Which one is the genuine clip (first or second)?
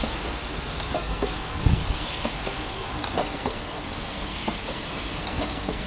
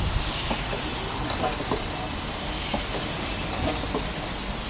second